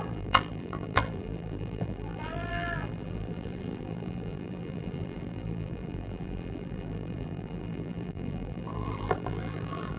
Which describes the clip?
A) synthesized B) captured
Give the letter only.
A